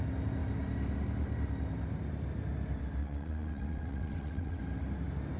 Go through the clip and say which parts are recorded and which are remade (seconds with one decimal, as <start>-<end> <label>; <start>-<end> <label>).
0.0-3.0 recorded; 3.0-4.6 remade; 4.6-5.4 recorded